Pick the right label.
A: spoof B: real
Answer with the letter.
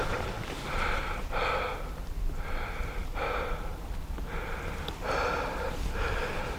B